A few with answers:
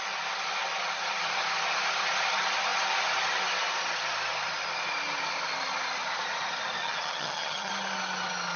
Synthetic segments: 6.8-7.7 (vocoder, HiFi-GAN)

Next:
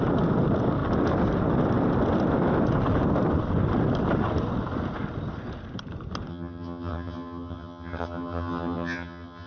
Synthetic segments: 6.3-9.5 (vocoder, HiFi-GAN)

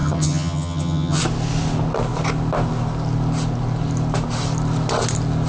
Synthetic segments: 0.0-1.2 (vocoder, HiFi-GAN)

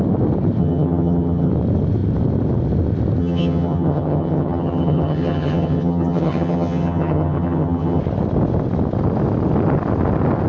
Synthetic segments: 0.6-1.5 (vocoder, HiFi-GAN); 3.2-8.0